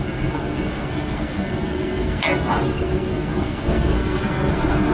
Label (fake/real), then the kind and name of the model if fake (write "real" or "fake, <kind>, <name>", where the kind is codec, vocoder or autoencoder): fake, codec, SNAC